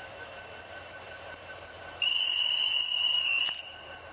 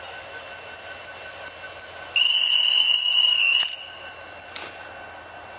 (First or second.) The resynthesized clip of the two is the first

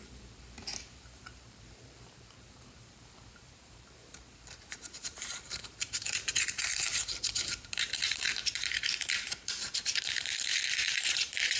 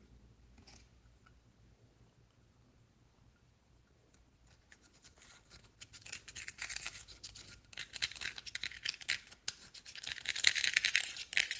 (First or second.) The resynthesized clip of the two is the first